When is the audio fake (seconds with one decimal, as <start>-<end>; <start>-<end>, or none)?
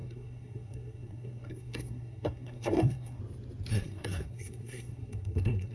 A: 0.0-3.2; 3.7-5.7